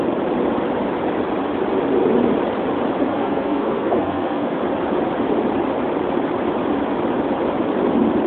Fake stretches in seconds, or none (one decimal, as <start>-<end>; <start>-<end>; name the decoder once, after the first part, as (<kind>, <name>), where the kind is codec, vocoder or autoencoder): 3.1-4.6 (codec, SNAC)

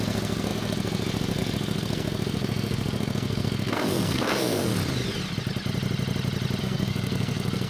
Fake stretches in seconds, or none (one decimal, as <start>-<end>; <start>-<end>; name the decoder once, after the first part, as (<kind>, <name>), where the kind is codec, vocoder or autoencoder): 0.0-4.7 (codec, SNAC); 6.6-7.7

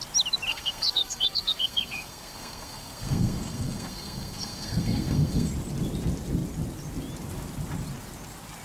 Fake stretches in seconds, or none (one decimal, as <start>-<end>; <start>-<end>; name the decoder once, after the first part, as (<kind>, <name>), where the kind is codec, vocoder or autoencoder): 0.5-5.5 (codec, SNAC)

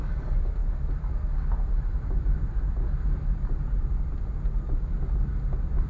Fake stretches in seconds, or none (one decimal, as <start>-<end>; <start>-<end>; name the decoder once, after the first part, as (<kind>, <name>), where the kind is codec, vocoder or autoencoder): none

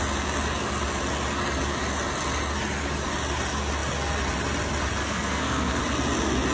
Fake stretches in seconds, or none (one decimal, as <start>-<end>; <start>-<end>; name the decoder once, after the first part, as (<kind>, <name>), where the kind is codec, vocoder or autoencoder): 5.0-5.8 (codec, SNAC)

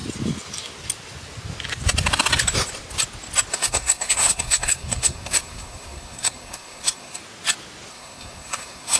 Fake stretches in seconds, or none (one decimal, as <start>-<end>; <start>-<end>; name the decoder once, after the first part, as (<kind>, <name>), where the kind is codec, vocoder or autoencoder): 3.5-7.2 (codec, SNAC); 7.9-9.0